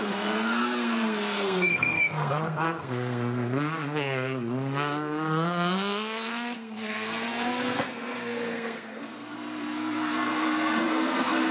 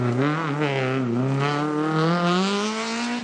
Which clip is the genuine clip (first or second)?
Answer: second